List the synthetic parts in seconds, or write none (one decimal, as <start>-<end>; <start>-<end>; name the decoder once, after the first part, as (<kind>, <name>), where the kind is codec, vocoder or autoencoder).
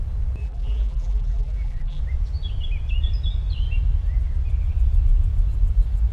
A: 0.4-2.0 (vocoder, BigVGAN v2)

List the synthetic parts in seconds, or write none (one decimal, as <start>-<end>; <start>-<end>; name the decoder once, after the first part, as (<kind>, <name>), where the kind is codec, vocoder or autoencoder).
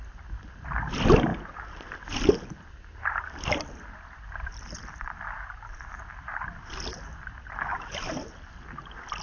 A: 7.7-8.3 (vocoder, BigVGAN v2)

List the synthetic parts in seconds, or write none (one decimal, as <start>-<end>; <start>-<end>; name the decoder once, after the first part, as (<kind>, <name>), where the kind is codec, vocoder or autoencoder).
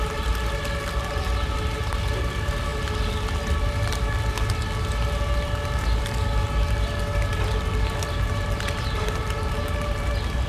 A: none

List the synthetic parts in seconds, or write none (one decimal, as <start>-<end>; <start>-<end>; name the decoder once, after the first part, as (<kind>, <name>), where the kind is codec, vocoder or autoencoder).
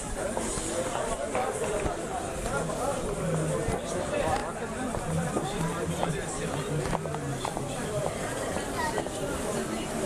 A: 7.3-9.2 (vocoder, BigVGAN v2)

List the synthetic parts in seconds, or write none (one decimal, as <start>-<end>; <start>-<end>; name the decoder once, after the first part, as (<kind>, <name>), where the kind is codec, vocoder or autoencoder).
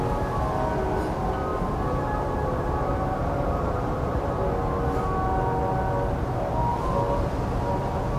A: 1.5-4.3 (vocoder, BigVGAN v2); 6.7-7.3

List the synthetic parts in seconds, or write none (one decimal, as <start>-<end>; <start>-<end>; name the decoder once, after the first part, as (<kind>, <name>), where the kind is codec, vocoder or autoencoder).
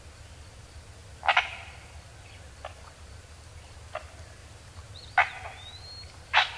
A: 4.4-4.9 (vocoder, BigVGAN v2)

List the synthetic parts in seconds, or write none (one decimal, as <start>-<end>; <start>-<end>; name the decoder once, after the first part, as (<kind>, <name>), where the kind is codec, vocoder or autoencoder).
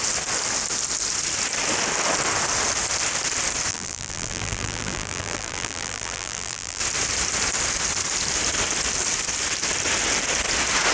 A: 3.7-6.8 (vocoder, BigVGAN v2)